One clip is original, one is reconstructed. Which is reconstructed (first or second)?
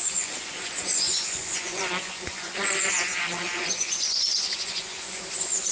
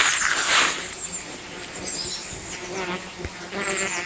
first